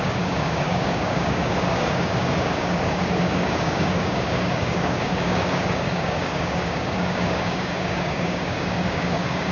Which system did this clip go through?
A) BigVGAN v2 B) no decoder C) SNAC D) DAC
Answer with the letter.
D